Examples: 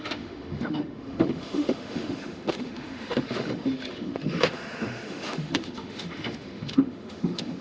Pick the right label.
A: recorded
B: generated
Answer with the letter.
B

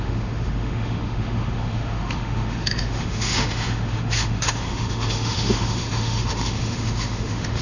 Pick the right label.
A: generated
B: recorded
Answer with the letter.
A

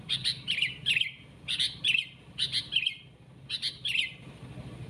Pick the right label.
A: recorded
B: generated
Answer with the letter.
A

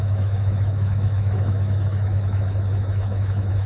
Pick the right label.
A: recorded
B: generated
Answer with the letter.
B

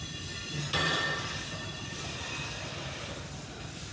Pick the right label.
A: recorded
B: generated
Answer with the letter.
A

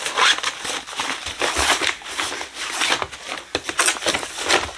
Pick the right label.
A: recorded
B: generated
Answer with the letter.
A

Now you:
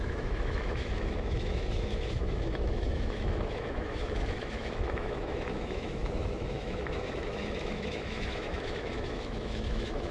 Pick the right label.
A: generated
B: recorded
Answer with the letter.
A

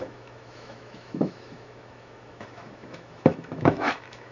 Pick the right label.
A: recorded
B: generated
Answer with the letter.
B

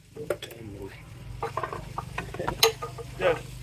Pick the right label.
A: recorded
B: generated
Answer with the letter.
A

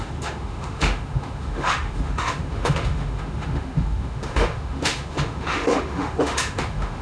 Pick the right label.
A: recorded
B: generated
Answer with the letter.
B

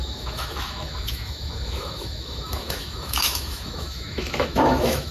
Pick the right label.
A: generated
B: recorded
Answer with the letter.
A